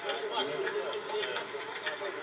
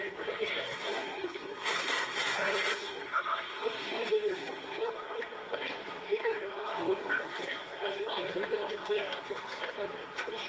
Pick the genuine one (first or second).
first